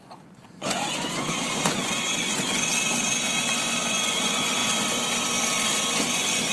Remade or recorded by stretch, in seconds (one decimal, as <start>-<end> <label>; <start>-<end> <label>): 0.0-2.7 remade; 2.7-3.5 recorded; 3.5-4.6 remade; 4.6-5.9 recorded; 5.9-6.5 remade